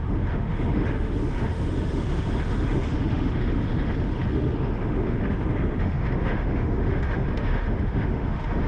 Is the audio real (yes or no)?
no